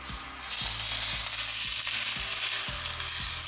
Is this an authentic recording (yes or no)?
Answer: yes